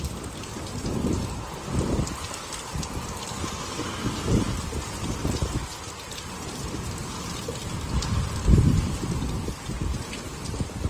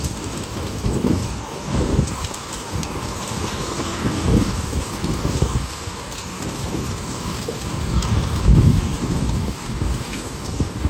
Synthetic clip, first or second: second